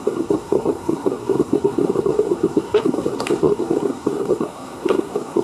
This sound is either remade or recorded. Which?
remade